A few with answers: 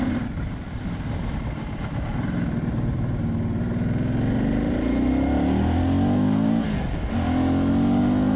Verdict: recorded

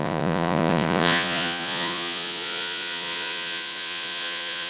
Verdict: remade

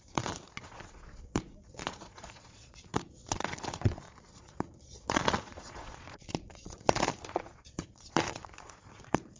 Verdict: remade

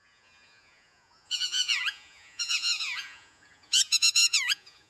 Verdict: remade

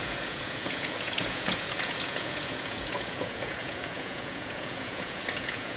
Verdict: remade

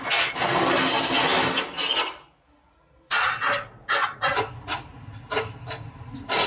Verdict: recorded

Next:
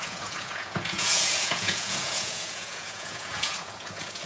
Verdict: remade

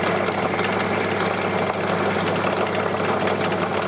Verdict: recorded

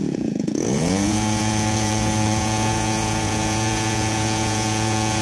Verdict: remade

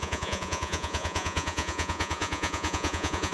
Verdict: remade